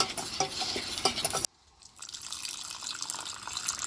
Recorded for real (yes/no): yes